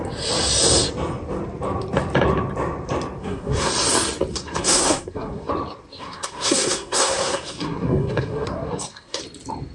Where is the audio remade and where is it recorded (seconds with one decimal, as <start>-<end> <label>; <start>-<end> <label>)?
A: 0.0-3.2 recorded; 3.2-3.7 remade; 3.7-4.3 recorded; 4.3-5.5 remade; 5.5-5.9 recorded; 5.9-9.2 remade; 9.2-9.7 recorded